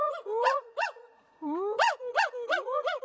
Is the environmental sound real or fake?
fake